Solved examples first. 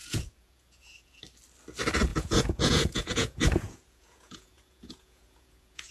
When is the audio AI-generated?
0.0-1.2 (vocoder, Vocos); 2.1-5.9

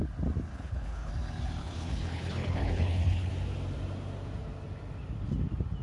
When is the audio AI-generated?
0.5-1.1 (codec, HILCodec); 1.6-3.3

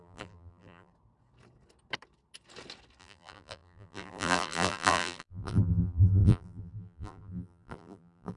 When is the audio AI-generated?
0.0-0.9 (vocoder, BigVGAN v2); 3.0-8.4